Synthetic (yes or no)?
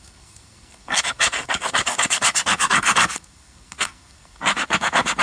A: yes